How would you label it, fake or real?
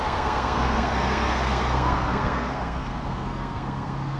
fake